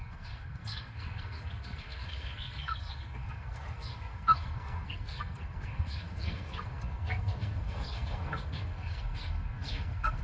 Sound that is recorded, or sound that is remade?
remade